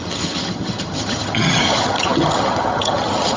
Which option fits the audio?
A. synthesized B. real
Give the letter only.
A